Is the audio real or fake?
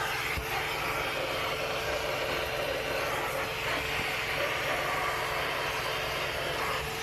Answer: real